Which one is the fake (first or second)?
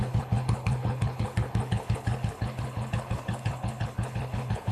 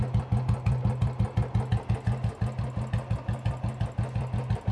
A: first